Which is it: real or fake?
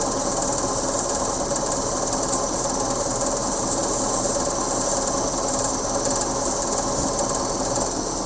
real